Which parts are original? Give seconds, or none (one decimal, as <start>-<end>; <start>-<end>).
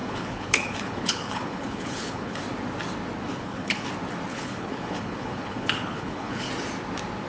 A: 2.4-3.3; 3.9-4.3; 6.5-7.3